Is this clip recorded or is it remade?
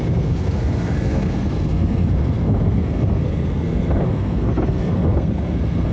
remade